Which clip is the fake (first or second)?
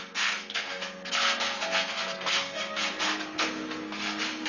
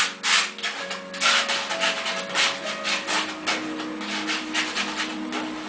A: first